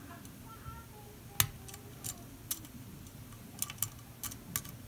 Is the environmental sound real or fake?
real